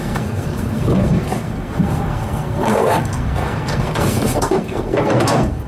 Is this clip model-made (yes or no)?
yes